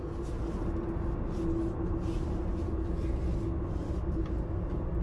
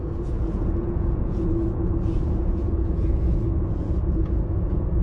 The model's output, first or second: second